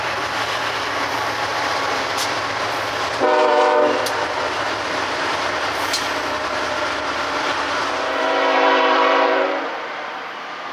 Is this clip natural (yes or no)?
no